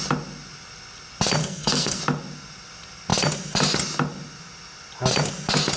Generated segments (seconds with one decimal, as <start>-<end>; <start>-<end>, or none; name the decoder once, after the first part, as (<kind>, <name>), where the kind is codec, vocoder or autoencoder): 1.4-2.0 (codec, SNAC)